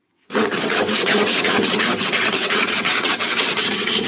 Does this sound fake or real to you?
fake